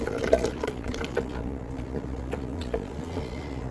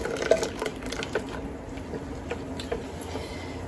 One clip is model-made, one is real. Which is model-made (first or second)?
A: first